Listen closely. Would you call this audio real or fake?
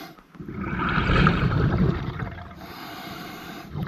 fake